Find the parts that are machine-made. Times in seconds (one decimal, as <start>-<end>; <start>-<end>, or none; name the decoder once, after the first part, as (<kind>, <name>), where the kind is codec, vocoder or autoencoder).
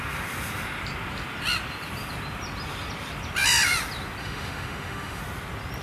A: 4.2-5.2 (autoencoder, DAC-VAE)